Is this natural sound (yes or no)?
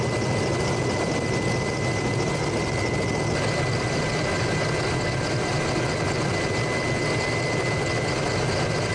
yes